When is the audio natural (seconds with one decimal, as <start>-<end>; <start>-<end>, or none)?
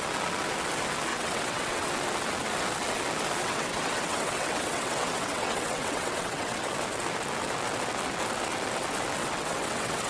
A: 0.0-1.1; 1.9-3.4; 6.7-9.2